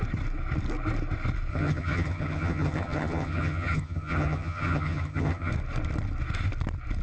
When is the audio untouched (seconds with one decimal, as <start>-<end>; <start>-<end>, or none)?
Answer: 0.0-1.5; 5.5-7.0